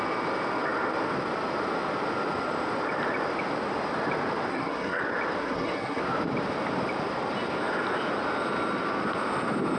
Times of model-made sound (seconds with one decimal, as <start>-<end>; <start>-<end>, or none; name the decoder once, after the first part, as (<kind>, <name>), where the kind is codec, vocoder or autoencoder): 4.5-5.0 (codec, SNAC); 5.4-6.0